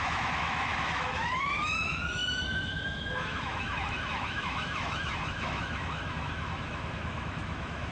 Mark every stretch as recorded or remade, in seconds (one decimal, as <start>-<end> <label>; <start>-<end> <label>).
0.0-7.9 remade